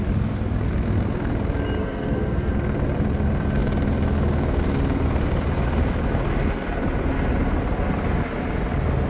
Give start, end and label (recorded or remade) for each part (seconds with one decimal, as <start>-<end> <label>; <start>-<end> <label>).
0.0-1.8 recorded; 1.8-2.5 remade; 2.5-9.1 recorded